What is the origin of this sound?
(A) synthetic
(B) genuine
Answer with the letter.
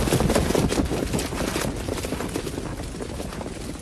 B